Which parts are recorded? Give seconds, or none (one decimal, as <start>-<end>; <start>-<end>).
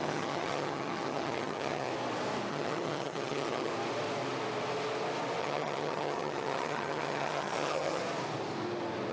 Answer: 1.9-2.5; 3.7-5.4; 8.0-9.1